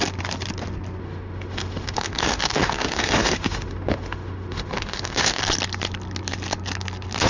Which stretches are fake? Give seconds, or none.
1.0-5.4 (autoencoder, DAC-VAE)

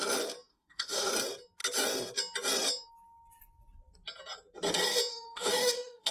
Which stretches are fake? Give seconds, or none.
0.5-1.1 (autoencoder, DAC-VAE); 5.1-6.1

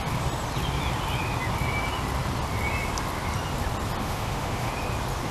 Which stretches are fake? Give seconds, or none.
4.0-4.7 (autoencoder, DAC-VAE)

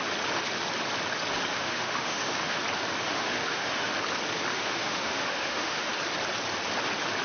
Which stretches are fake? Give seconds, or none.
1.5-2.6 (autoencoder, DAC-VAE); 3.1-3.9; 4.5-5.9

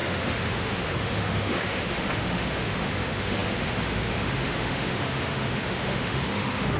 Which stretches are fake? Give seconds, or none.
0.0-6.8 (autoencoder, DAC-VAE)

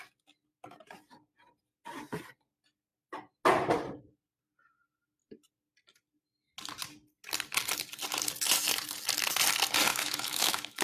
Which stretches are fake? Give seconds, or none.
9.9-10.8 (autoencoder, DAC-VAE)

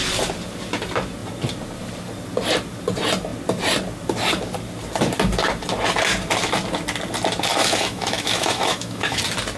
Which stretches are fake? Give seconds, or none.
7.5-9.2 (autoencoder, DAC-VAE)

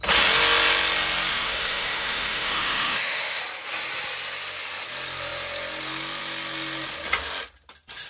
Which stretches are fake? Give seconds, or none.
1.3-3.4 (autoencoder, DAC-VAE)